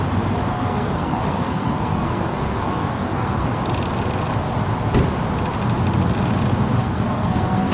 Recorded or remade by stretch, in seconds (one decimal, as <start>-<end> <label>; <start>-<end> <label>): 0.0-0.5 recorded; 0.5-3.6 remade; 3.6-6.8 recorded; 6.8-7.7 remade